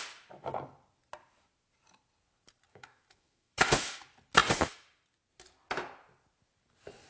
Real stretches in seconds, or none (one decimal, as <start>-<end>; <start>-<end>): 0.0-2.7; 4.0-7.1